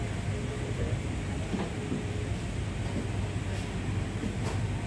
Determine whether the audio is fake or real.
real